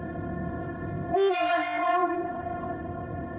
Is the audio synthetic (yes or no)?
yes